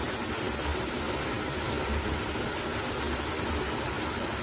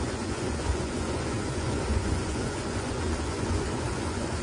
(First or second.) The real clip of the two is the first